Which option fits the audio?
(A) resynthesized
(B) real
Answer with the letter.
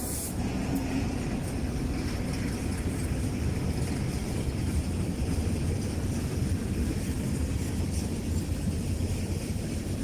B